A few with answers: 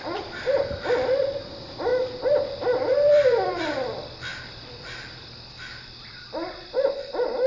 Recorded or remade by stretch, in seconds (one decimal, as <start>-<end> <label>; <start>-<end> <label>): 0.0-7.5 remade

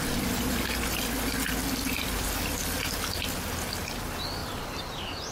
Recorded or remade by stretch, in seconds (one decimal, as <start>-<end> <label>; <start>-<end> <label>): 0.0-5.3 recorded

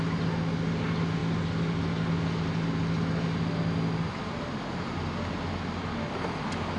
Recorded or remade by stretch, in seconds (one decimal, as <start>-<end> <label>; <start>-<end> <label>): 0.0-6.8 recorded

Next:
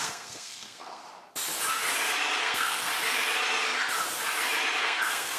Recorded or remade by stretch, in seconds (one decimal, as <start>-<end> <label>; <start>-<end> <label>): 0.0-1.0 remade; 1.0-2.4 recorded; 2.4-2.9 remade; 2.9-4.8 recorded; 4.8-5.4 remade

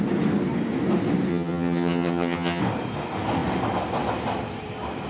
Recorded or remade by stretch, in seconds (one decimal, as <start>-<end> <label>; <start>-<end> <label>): 0.0-1.3 recorded; 1.3-2.6 remade; 2.6-5.1 recorded

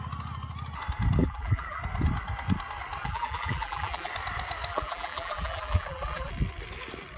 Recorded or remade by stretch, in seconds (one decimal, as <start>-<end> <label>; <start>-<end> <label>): 0.0-1.2 recorded; 1.2-1.8 remade; 1.8-3.0 recorded; 3.0-4.1 remade; 4.1-4.7 recorded; 4.7-6.3 remade; 6.3-7.2 recorded

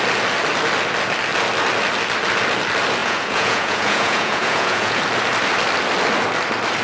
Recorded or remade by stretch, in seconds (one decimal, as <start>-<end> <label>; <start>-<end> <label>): 0.0-3.0 recorded; 3.0-5.0 remade; 5.0-6.8 recorded

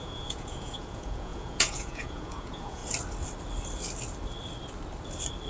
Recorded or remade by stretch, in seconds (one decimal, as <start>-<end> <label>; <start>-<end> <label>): 0.0-2.8 remade; 2.8-5.5 recorded